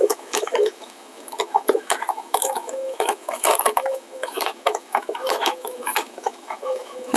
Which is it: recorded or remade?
remade